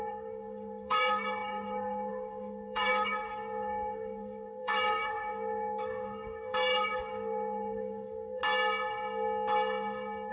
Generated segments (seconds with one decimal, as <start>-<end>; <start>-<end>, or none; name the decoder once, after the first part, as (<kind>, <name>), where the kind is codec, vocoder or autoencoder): 0.0-8.4 (codec, SNAC)